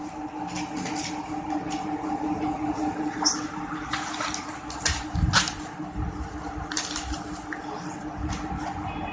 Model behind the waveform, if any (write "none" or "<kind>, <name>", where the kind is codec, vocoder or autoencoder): none